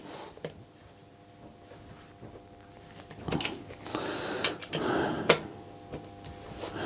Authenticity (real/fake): real